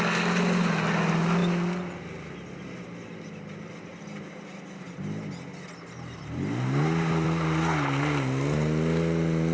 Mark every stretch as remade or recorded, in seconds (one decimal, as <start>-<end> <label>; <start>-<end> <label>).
0.0-9.5 recorded